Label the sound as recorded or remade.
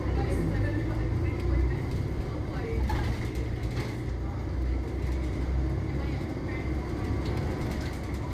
recorded